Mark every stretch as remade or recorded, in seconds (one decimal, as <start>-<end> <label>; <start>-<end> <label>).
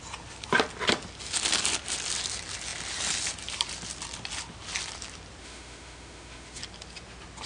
0.0-5.4 recorded; 5.4-6.6 remade; 6.6-7.5 recorded